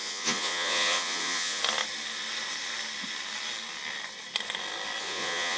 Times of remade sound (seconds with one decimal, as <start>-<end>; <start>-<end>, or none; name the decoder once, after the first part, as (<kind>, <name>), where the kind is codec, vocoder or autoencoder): 0.0-1.6 (vocoder, Vocos); 5.0-5.6